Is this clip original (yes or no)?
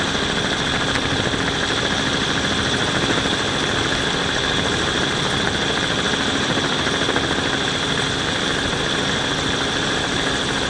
yes